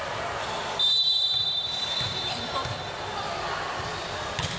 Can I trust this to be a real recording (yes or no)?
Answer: yes